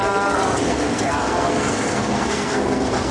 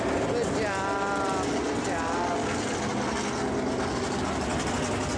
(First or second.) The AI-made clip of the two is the first